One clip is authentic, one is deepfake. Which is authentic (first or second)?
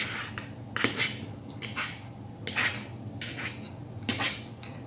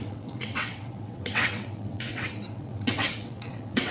first